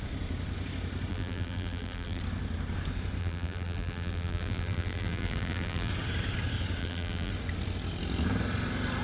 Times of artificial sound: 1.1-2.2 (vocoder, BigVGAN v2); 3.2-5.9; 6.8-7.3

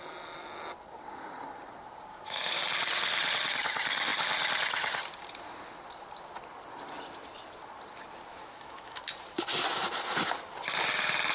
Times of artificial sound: 2.1-2.6 (autoencoder, DAC-VAE); 8.3-9.0

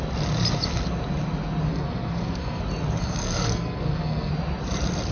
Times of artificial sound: 1.7-2.6 (codec, SNAC); 3.0-4.3

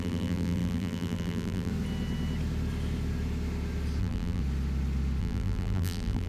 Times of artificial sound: 0.0-1.7 (vocoder, BigVGAN v2); 4.0-4.4; 5.2-6.3

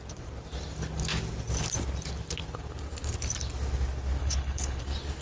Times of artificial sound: 4.2-4.8 (codec, HILCodec)

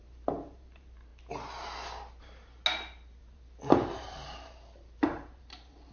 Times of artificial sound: 0.0-1.1 (vocoder, BigVGAN v2); 2.2-2.6; 3.2-5.9